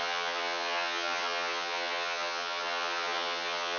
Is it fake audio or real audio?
fake